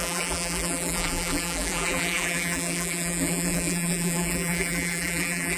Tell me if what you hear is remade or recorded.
remade